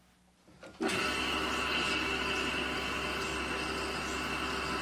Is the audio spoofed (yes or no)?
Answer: no